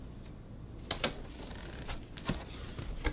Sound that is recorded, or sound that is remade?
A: recorded